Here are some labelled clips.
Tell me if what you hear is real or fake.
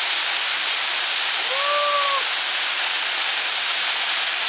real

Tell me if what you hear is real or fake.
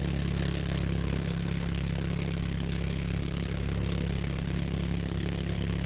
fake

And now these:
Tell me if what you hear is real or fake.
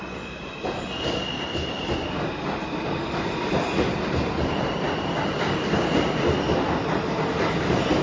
real